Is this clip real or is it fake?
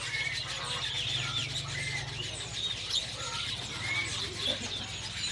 real